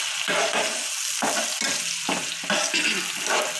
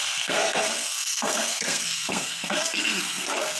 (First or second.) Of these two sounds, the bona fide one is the first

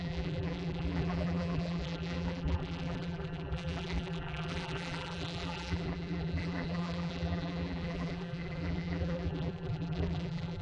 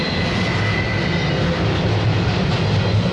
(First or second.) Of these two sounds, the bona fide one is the second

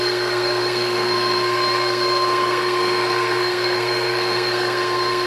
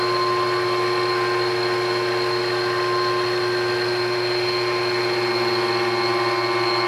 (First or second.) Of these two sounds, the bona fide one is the second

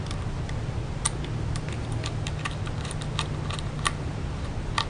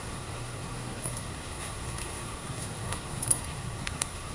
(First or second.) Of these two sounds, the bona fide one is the first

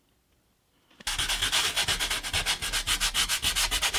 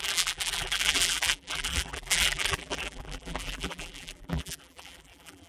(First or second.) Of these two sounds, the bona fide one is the first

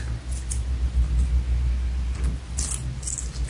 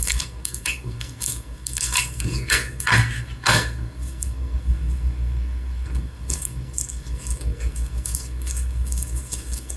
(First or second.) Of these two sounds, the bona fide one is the first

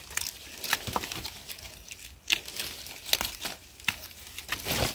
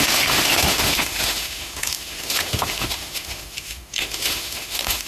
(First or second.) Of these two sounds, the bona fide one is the first